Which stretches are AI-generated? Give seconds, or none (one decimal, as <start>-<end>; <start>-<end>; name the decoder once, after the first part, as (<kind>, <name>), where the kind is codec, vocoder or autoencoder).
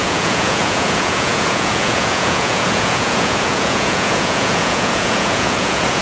0.0-6.0 (vocoder, Vocos)